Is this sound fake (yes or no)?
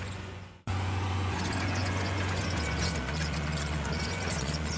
yes